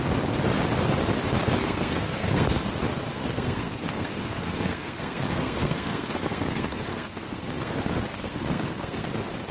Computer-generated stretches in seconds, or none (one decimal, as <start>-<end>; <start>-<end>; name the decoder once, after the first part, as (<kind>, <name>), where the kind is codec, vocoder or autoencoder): 1.6-2.7 (codec, SNAC); 3.1-7.7; 8.1-9.1